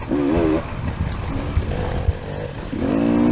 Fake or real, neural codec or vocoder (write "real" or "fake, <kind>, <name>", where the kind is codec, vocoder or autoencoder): real